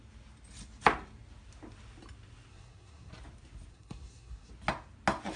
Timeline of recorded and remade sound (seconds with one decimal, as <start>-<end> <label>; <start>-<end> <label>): 0.0-2.5 recorded; 2.5-3.1 remade; 3.1-3.7 recorded; 3.7-4.5 remade; 4.5-5.4 recorded